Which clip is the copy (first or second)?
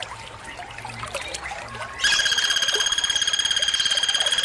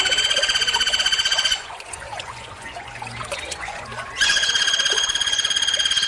second